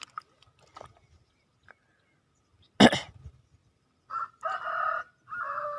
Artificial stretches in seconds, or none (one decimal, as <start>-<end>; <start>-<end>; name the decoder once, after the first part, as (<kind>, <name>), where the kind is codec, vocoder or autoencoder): 3.6-4.4 (vocoder, BigVGAN v2)